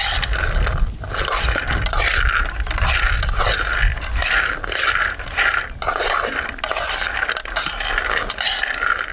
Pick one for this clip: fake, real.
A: real